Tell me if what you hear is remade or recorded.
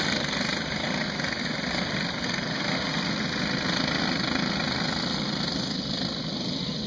recorded